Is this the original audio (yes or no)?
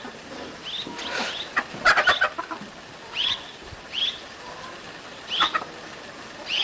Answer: yes